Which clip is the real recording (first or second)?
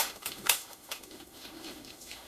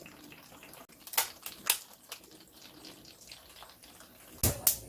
second